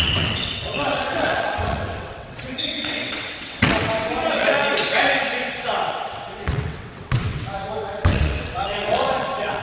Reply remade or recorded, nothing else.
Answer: remade